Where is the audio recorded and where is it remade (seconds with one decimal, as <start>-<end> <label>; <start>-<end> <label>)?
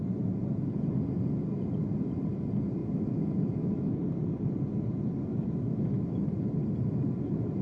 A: 0.0-2.8 recorded; 2.8-4.0 remade; 4.0-5.3 recorded; 5.3-6.2 remade; 6.2-7.6 recorded